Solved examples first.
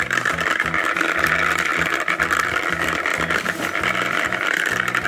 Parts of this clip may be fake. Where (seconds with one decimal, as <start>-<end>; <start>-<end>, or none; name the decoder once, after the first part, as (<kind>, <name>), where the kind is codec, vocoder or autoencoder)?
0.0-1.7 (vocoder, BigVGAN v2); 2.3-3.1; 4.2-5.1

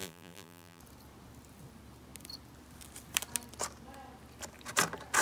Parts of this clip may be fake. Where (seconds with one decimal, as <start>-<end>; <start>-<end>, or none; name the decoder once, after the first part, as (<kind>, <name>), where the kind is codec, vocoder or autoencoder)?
0.0-0.8 (vocoder, BigVGAN v2)

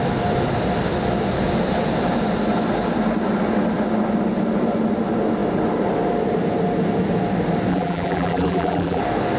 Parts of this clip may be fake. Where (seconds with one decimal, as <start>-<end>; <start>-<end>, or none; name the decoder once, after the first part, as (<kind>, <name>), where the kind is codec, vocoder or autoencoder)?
7.7-9.0 (vocoder, BigVGAN v2)

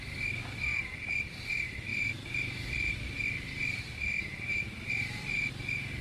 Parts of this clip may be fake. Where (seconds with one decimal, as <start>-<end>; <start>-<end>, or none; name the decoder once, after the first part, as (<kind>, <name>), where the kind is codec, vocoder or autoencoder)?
1.9-5.5 (vocoder, BigVGAN v2)

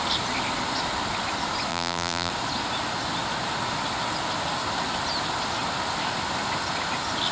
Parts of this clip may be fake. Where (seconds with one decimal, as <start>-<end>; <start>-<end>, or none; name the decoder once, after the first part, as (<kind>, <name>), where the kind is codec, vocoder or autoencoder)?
1.7-2.3 (vocoder, BigVGAN v2)

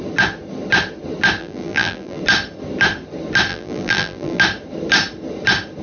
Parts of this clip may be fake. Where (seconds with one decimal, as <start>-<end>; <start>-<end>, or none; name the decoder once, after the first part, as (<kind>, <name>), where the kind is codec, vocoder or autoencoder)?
1.4-2.2 (vocoder, BigVGAN v2); 3.5-4.4